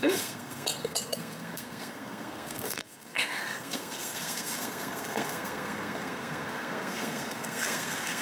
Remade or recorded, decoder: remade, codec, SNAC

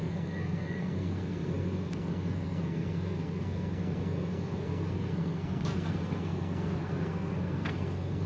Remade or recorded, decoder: remade, codec, SNAC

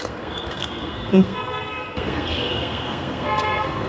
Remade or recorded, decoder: remade, codec, SNAC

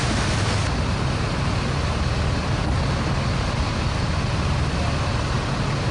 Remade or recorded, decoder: recorded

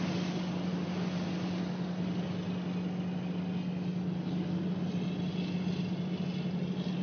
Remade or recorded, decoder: recorded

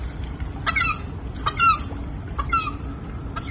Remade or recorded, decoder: recorded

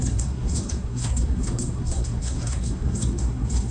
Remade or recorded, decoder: remade, codec, SNAC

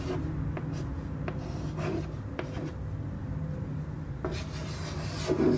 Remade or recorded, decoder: recorded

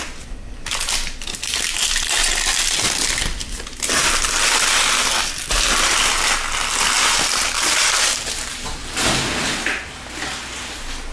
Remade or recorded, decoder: recorded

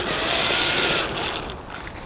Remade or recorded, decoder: recorded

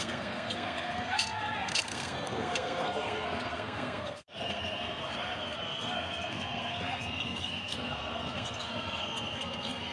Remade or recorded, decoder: remade, codec, SNAC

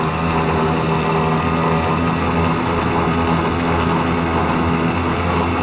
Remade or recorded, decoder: recorded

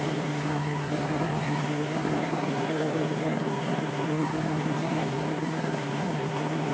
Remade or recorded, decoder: remade, codec, SNAC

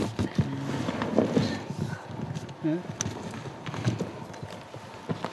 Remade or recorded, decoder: recorded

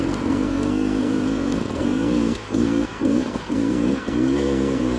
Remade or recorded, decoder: remade, codec, SNAC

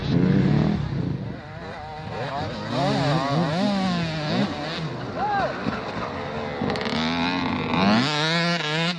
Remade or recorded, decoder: recorded